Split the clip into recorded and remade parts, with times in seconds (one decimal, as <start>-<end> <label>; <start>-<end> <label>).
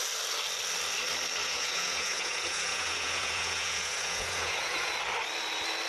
0.0-1.4 recorded; 1.4-4.9 remade; 4.9-5.9 recorded